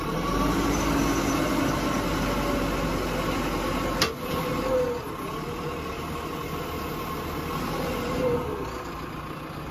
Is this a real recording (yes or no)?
yes